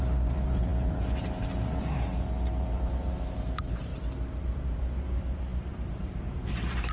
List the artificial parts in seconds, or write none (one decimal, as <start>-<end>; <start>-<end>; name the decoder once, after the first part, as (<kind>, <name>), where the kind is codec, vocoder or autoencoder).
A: 0.0-3.9 (vocoder, BigVGAN v2); 4.4-6.9